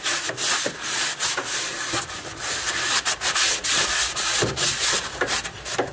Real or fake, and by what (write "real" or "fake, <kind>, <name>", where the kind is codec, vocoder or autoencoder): real